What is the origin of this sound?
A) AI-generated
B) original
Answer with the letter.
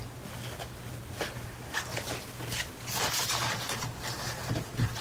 B